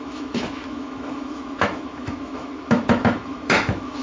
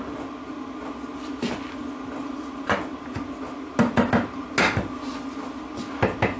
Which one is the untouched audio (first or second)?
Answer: second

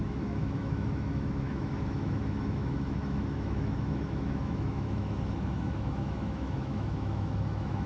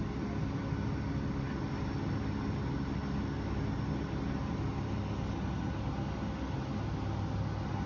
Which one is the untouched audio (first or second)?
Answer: second